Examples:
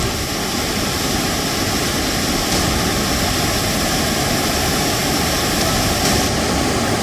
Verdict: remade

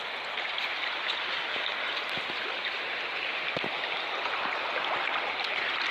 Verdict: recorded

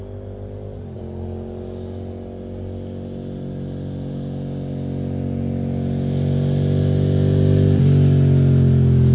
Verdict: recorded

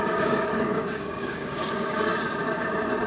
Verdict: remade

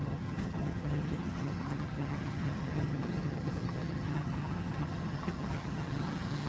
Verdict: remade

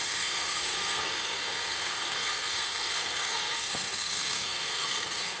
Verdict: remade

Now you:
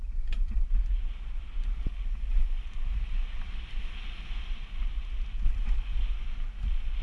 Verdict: remade